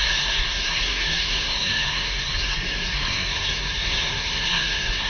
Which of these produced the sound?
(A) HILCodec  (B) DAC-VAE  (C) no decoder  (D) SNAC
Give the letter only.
D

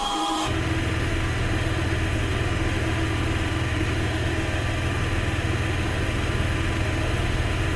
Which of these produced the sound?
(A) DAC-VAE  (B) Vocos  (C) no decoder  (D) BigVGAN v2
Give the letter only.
A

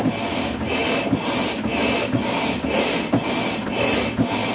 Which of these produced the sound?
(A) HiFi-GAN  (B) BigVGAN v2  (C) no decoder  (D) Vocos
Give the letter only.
C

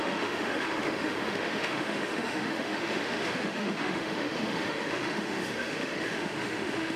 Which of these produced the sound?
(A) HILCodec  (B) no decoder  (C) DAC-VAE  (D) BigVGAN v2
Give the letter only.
C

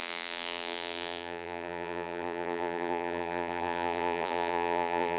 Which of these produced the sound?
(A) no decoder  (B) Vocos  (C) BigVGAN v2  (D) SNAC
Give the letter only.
C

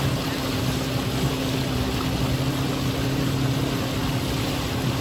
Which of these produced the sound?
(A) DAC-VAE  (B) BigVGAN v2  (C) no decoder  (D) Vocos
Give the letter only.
C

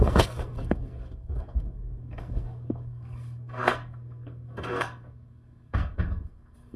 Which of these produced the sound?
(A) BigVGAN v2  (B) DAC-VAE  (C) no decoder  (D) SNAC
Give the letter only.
D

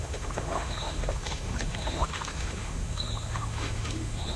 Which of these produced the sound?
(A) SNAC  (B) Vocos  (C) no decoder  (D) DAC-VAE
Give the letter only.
D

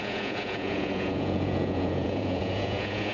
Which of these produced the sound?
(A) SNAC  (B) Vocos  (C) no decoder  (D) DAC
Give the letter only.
B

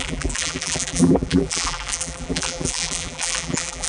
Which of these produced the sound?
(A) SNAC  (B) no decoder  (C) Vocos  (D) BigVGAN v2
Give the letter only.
D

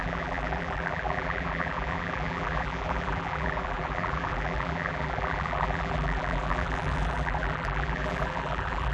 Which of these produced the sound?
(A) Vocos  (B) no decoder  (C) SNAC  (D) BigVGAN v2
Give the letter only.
D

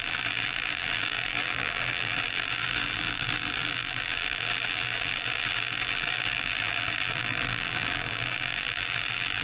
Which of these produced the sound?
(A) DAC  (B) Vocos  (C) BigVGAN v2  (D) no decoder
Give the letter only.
C